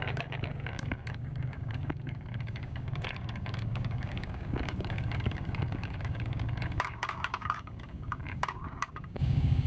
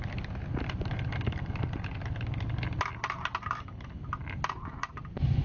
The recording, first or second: second